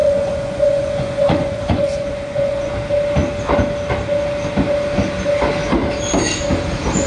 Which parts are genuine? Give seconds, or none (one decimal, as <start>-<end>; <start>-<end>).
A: 2.7-7.1